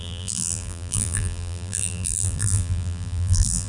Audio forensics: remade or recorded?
remade